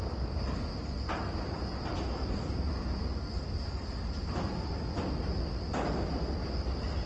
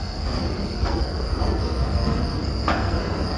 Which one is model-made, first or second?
second